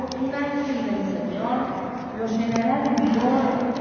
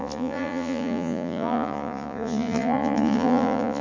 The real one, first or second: first